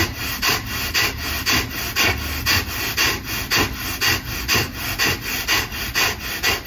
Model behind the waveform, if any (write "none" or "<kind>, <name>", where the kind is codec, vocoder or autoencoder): none